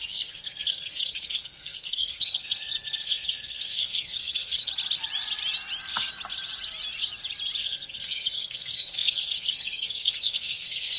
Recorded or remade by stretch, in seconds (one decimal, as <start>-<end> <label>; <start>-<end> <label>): 0.0-4.7 remade; 4.7-7.6 recorded; 7.6-11.0 remade

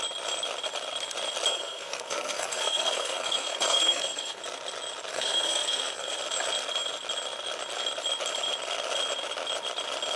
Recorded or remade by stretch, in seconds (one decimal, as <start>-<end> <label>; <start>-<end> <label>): 0.0-1.5 recorded; 1.5-4.4 remade; 4.4-5.1 recorded; 5.1-6.2 remade; 6.2-10.2 recorded

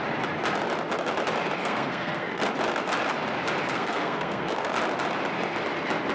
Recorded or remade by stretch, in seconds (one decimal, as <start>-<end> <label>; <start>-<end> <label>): 0.0-1.6 recorded; 1.6-2.4 remade; 2.4-3.7 recorded; 3.7-4.7 remade; 4.7-6.1 recorded

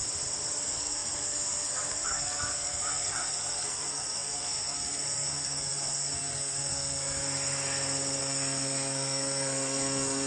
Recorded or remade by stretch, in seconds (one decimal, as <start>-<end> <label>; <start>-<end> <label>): 0.0-0.6 recorded; 0.6-7.2 remade; 7.2-8.2 recorded; 8.2-10.3 remade